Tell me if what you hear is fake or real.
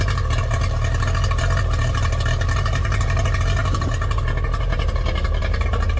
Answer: fake